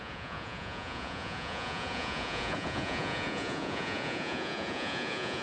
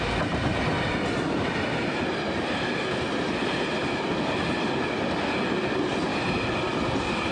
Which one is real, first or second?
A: second